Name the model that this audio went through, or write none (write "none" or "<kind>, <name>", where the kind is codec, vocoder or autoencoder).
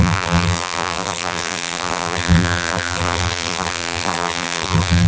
vocoder, BigVGAN v2